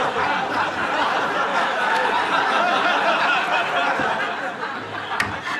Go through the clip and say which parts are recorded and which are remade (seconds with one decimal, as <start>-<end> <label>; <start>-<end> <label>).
0.0-1.5 recorded; 1.5-2.1 remade; 2.1-5.6 recorded